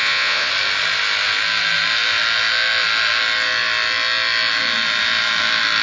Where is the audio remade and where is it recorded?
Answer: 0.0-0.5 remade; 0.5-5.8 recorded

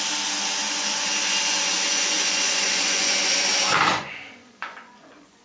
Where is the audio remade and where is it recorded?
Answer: 0.0-0.6 recorded; 0.6-3.5 remade; 3.5-3.9 recorded; 3.9-5.4 remade

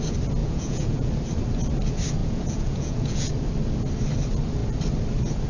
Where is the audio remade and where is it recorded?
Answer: 0.0-0.4 recorded; 0.4-1.1 remade; 1.1-2.2 recorded; 2.2-3.3 remade; 3.3-5.5 recorded

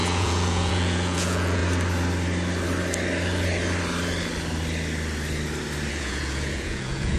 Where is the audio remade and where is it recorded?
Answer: 0.0-1.6 remade; 1.6-5.9 recorded; 5.9-7.2 remade

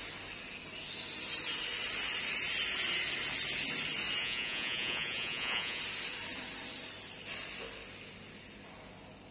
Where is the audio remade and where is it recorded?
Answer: 0.0-4.2 recorded; 4.2-5.8 remade; 5.8-9.3 recorded

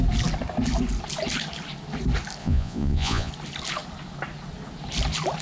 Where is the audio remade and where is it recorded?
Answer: 0.0-2.4 recorded; 2.4-3.3 remade; 3.3-5.4 recorded

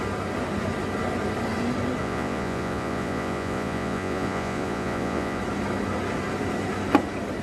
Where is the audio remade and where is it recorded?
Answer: 0.0-2.0 recorded; 2.0-5.4 remade; 5.4-7.4 recorded

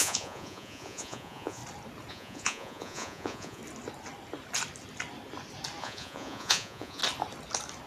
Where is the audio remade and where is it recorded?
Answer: 0.0-1.6 remade; 1.6-2.1 recorded; 2.1-3.6 remade; 3.6-5.8 recorded; 5.8-7.0 remade; 7.0-7.9 recorded